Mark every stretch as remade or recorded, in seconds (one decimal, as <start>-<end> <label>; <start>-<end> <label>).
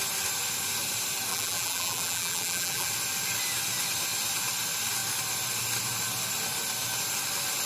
0.0-1.3 recorded; 1.3-2.9 remade; 2.9-7.7 recorded